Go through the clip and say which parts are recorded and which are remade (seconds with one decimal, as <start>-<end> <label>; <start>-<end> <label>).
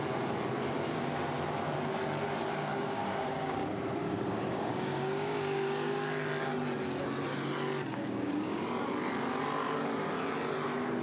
0.0-2.7 recorded; 2.7-6.1 remade; 6.1-7.9 recorded; 7.9-8.6 remade; 8.6-11.0 recorded